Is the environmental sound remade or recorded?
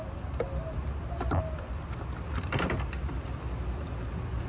recorded